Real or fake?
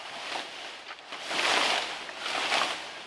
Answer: real